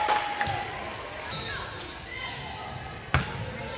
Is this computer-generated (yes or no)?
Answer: no